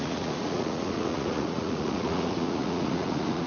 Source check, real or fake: fake